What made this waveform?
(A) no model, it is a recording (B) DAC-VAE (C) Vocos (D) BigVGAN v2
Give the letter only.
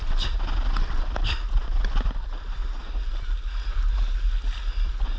A